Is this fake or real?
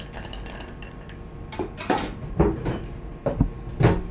real